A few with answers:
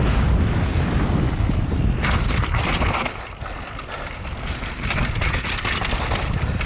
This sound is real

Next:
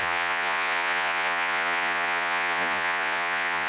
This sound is fake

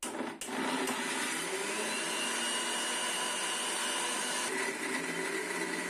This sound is real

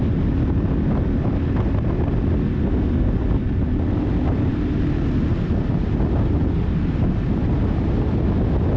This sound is real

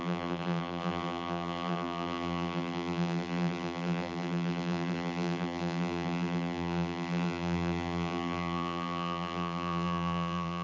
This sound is fake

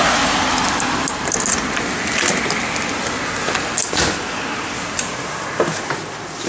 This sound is real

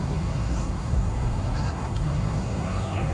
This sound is fake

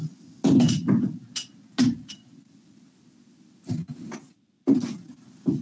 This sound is real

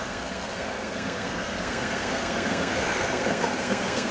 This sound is fake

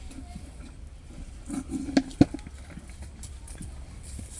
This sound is real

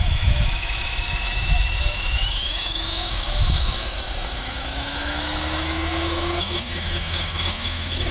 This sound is fake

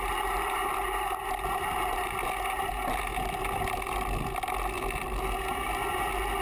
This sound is real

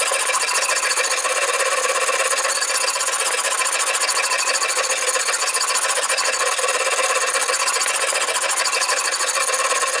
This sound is real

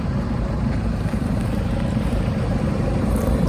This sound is fake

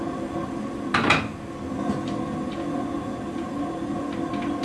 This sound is real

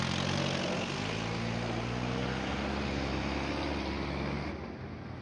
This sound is real